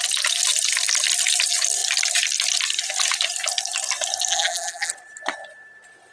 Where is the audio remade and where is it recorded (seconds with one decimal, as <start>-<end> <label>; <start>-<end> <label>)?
0.0-4.3 recorded; 4.3-4.9 remade; 4.9-6.1 recorded

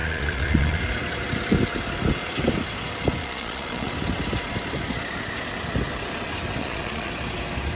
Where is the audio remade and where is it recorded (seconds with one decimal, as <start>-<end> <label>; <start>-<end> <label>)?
0.0-0.8 remade; 0.8-3.2 recorded; 3.2-3.9 remade; 3.9-6.6 recorded; 6.6-7.1 remade; 7.1-7.8 recorded

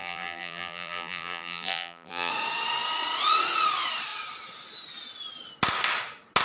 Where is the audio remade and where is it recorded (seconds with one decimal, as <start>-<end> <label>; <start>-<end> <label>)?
0.0-2.3 remade; 2.3-6.4 recorded